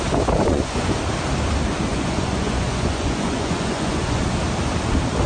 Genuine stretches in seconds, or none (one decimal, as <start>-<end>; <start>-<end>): 0.0-0.4; 1.0-1.9; 4.2-5.3